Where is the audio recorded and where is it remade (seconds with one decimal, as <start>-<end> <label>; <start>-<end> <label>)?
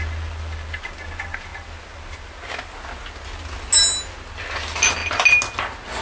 0.0-6.0 recorded